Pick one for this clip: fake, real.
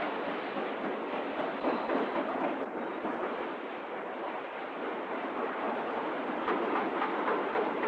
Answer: real